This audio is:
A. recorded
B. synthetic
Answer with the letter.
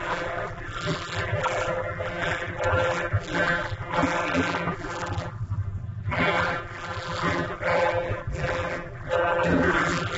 B